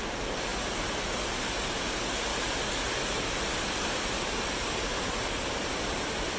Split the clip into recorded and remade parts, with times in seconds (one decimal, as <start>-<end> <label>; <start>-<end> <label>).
0.0-0.5 recorded; 0.5-1.3 remade; 1.3-2.3 recorded; 2.3-6.4 remade